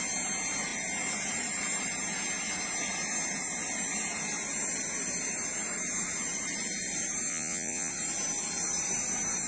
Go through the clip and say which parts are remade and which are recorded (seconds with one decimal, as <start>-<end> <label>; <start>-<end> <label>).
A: 0.0-7.3 recorded; 7.3-7.9 remade; 7.9-9.5 recorded